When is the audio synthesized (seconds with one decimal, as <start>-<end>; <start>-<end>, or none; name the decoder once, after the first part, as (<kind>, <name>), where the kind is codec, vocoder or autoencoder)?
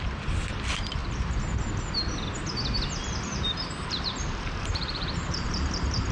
3.3-6.1 (vocoder, BigVGAN v2)